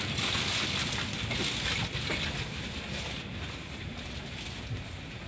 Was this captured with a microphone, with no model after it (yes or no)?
yes